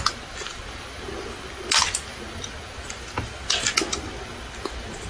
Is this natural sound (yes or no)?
yes